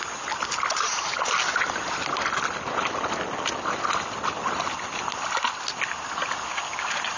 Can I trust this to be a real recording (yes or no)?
yes